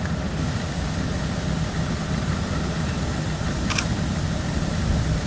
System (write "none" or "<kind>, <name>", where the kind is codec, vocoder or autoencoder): none